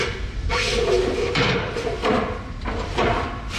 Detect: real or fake fake